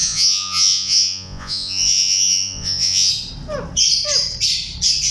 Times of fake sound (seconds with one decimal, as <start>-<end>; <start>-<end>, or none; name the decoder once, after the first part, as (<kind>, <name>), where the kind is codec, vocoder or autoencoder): 0.0-3.1 (vocoder, Vocos)